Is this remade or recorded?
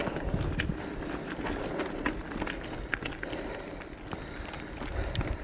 recorded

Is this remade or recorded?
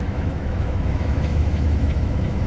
remade